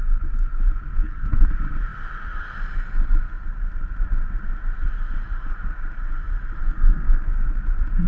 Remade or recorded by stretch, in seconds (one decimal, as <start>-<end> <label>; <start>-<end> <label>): 0.0-0.9 recorded; 0.9-1.4 remade; 1.4-6.6 recorded; 6.6-7.3 remade; 7.3-8.1 recorded